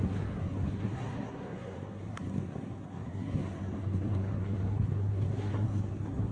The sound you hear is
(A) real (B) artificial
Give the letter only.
B